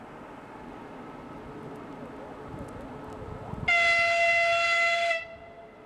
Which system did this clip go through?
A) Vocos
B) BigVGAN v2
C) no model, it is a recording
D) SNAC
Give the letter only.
C